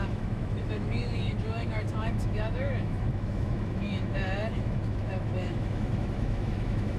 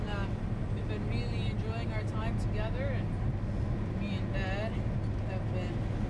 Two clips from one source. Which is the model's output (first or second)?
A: first